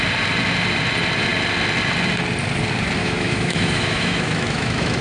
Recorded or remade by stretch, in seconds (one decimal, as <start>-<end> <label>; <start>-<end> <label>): 0.0-3.0 recorded; 3.0-5.0 remade